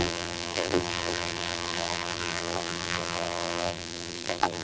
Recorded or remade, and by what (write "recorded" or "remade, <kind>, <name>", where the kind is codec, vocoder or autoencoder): remade, vocoder, BigVGAN v2